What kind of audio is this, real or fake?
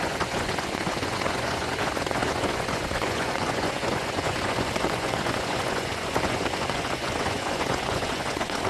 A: fake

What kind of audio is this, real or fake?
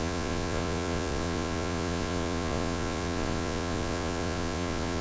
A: fake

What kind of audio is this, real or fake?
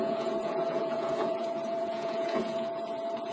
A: fake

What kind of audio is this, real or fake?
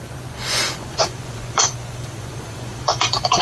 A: fake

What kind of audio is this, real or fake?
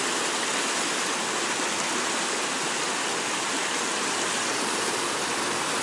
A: real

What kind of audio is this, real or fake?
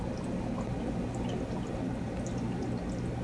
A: real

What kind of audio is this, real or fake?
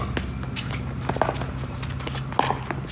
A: real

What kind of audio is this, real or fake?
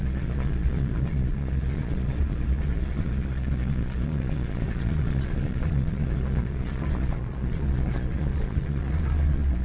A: fake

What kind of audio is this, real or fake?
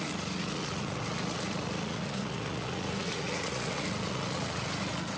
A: fake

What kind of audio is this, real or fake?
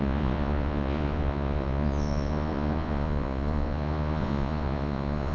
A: fake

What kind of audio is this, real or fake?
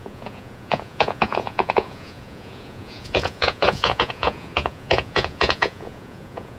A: fake